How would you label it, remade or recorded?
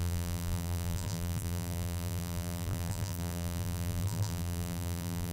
remade